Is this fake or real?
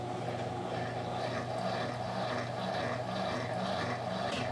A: real